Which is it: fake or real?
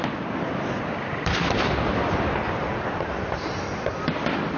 real